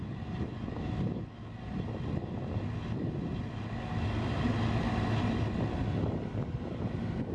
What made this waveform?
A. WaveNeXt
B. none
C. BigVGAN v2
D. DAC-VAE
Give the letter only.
B